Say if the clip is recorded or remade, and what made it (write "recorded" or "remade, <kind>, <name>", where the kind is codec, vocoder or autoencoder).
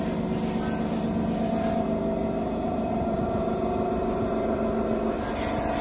recorded